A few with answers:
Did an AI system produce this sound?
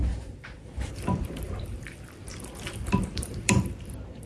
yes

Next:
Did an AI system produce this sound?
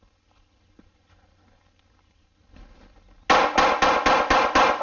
no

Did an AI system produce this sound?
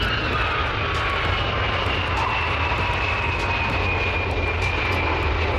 no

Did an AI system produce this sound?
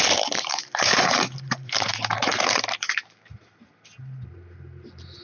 yes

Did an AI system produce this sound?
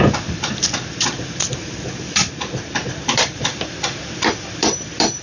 yes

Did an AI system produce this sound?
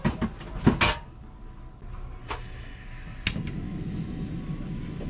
no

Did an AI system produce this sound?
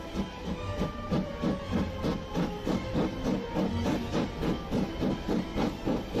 no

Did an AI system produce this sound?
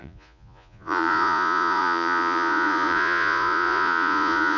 yes